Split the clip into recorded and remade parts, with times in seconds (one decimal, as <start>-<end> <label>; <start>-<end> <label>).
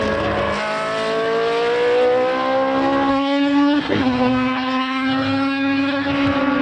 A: 0.0-3.1 recorded; 3.1-6.1 remade; 6.1-6.6 recorded